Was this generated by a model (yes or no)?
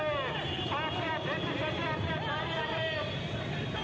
no